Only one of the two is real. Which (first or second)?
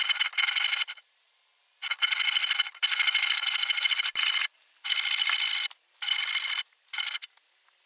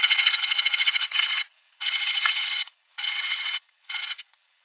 first